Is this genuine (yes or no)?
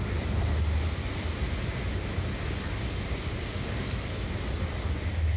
yes